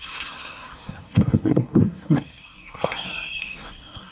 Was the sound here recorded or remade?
remade